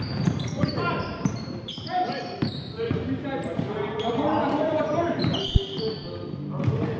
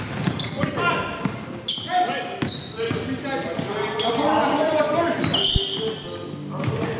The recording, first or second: second